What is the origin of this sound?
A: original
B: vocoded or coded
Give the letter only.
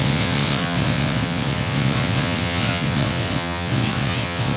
B